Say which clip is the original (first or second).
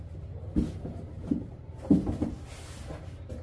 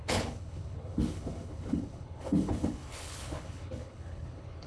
first